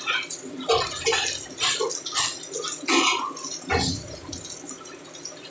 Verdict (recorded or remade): recorded